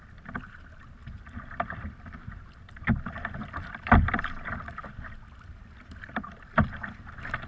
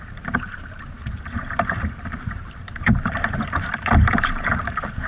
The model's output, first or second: second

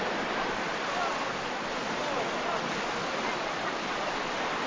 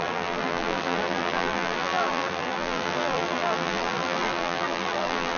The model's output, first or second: second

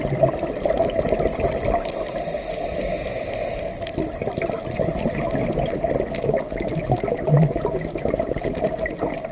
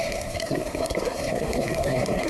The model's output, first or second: second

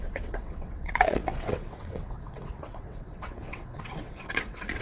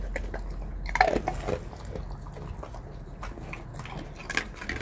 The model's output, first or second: first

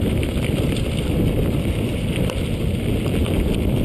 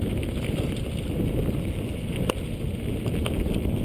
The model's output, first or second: first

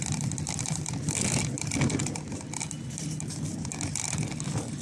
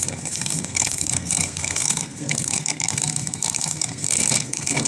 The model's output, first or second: second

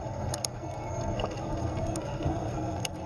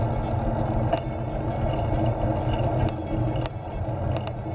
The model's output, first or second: first